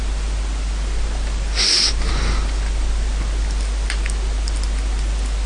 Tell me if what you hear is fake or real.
real